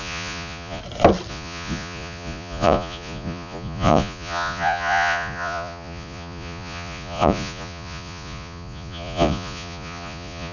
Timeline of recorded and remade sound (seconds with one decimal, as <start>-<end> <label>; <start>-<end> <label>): 0.0-0.8 remade; 0.8-1.3 recorded; 1.3-10.5 remade